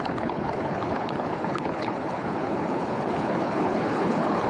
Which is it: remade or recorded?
remade